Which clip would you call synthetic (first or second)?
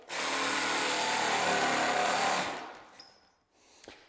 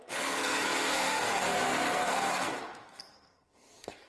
second